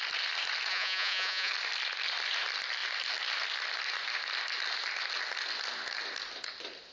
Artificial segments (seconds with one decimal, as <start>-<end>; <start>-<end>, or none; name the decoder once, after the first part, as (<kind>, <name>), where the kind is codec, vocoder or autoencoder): 0.7-1.5 (vocoder, Vocos)